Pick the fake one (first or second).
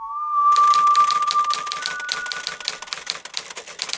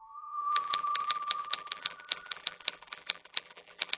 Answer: second